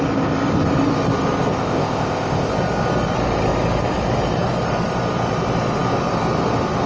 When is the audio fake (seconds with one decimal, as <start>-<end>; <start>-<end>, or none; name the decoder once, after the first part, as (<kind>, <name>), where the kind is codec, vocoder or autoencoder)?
1.5-2.5 (codec, ZipCodec)